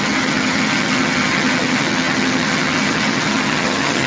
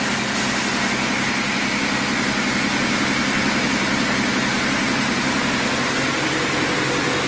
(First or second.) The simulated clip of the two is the first